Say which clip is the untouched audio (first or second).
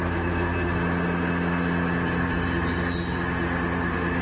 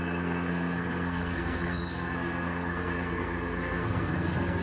first